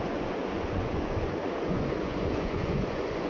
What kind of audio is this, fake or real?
fake